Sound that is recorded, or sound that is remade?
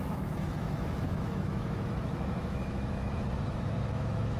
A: remade